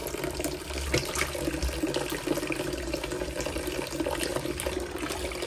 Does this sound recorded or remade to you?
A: recorded